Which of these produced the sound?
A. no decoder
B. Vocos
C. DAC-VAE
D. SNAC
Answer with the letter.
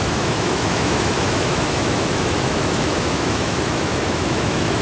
C